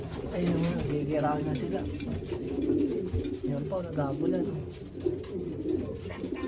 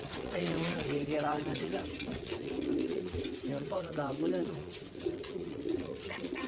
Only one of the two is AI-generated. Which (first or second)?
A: second